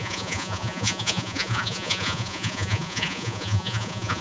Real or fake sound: fake